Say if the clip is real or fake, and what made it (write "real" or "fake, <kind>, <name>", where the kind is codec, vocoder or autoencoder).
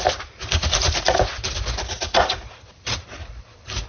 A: real